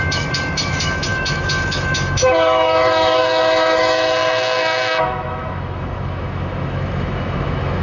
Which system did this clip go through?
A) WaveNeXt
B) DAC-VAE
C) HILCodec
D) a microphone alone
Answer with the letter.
B